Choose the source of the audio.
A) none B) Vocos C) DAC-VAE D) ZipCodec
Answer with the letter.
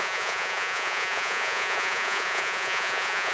B